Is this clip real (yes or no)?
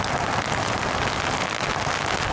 yes